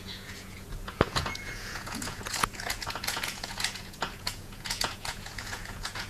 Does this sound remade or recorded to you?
remade